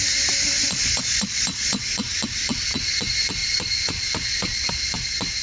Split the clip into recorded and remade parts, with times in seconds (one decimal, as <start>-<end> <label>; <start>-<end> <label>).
0.0-0.6 recorded; 0.6-1.8 remade; 1.8-3.4 recorded; 3.4-4.7 remade; 4.7-5.4 recorded